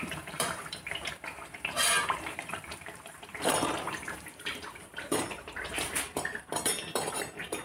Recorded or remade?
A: remade